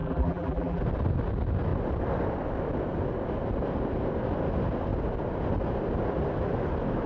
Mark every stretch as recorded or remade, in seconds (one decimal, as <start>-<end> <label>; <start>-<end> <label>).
0.0-0.8 remade; 0.8-7.1 recorded